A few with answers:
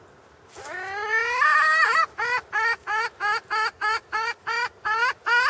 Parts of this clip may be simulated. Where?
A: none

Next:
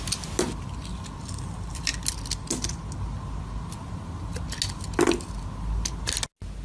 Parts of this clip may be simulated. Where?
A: none

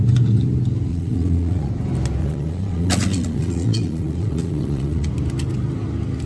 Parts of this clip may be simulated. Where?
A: 0.9-1.7 (vocoder, Vocos); 2.2-5.1